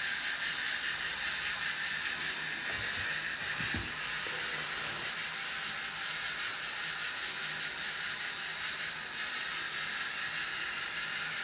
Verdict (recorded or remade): recorded